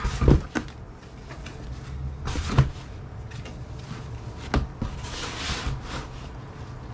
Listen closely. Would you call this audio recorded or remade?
recorded